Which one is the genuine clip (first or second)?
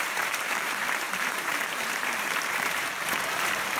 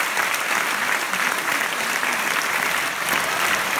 second